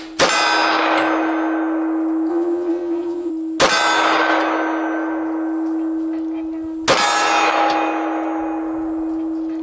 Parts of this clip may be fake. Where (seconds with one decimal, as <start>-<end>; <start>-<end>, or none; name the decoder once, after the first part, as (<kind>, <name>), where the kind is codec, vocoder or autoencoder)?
2.3-3.3 (vocoder, Vocos)